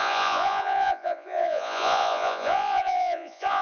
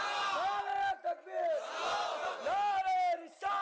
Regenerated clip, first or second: first